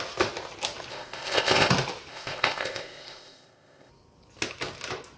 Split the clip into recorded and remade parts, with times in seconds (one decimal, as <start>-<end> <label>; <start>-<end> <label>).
0.0-0.9 recorded; 0.9-1.7 remade; 1.7-2.1 recorded; 2.1-3.9 remade; 3.9-5.2 recorded